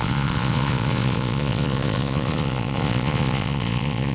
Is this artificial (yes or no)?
yes